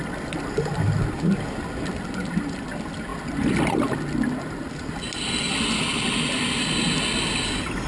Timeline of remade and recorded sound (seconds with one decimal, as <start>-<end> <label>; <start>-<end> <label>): 0.0-7.9 recorded